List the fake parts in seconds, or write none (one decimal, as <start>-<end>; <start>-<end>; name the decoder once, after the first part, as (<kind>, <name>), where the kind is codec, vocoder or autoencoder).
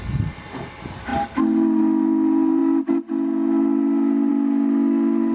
none